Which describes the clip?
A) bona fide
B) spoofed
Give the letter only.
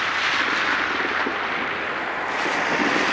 A